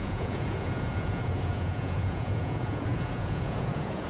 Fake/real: fake